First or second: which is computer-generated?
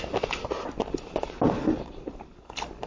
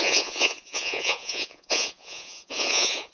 second